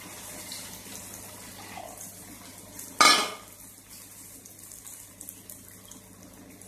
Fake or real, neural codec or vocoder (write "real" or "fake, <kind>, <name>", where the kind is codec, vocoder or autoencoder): real